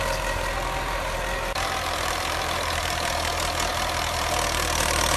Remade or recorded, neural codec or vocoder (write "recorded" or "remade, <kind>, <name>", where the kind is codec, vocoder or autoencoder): remade, vocoder, BigVGAN v2